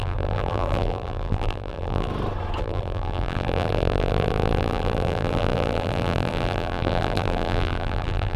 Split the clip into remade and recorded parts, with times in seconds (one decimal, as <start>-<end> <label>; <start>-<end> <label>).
0.0-2.1 remade; 2.1-2.6 recorded; 2.6-8.4 remade